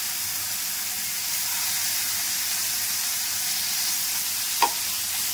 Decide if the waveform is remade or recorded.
recorded